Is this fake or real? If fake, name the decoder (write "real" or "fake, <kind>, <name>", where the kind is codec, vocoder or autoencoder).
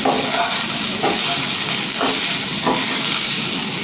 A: real